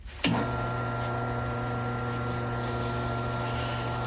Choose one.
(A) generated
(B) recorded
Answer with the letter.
B